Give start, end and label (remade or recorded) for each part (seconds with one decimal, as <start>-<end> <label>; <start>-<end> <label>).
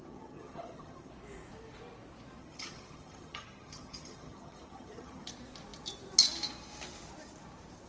0.0-1.1 remade; 1.1-2.4 recorded; 2.4-5.3 remade; 5.3-7.9 recorded